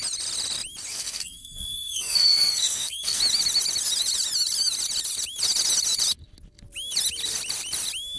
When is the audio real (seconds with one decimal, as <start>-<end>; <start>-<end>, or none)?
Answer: 0.0-0.9; 3.2-8.2